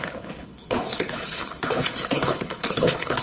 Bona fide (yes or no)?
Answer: no